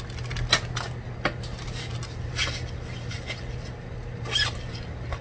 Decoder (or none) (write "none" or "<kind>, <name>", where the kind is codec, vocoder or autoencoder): none